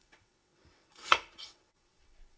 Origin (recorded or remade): remade